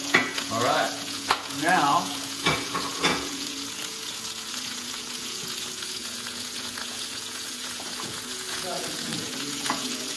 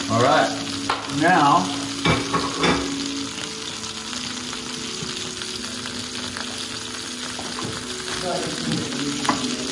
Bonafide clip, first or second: second